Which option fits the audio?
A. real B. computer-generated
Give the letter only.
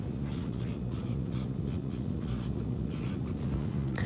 B